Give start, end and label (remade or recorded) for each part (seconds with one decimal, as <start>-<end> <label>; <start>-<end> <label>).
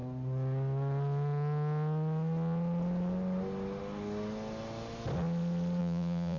0.0-5.8 recorded; 5.8-6.4 remade